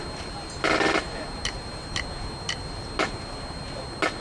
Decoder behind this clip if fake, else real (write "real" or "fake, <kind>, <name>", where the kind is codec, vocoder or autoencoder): real